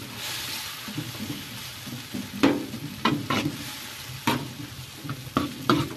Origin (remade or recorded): recorded